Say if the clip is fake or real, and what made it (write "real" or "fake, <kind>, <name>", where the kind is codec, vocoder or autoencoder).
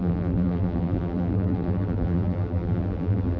fake, vocoder, BigVGAN v2